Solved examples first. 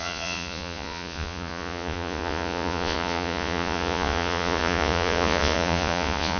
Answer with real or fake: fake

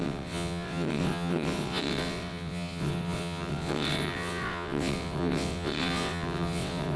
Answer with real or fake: fake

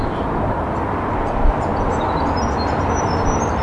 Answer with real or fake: real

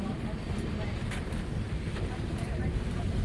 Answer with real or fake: fake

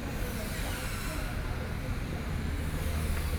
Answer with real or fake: real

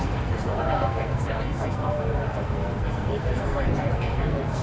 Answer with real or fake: fake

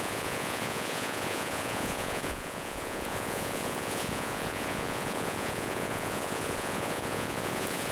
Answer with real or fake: fake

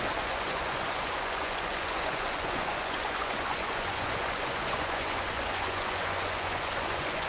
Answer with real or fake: fake